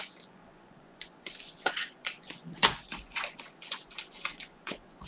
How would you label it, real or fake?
fake